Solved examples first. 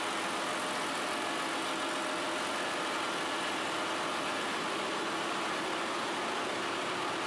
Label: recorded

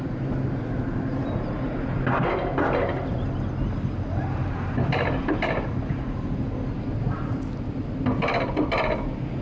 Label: recorded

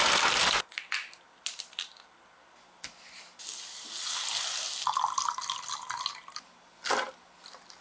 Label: recorded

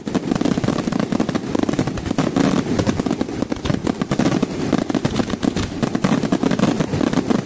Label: recorded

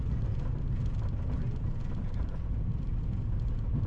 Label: recorded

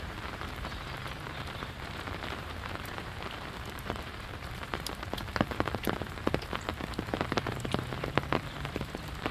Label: remade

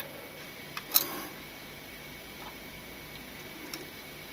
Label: recorded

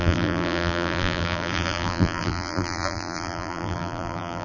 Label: remade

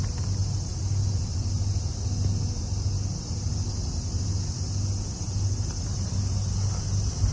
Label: recorded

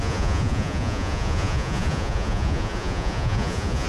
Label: remade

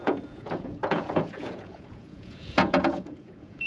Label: remade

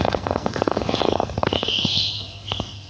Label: remade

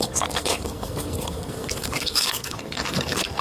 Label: remade